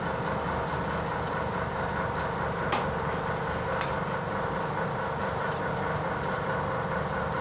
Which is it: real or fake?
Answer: real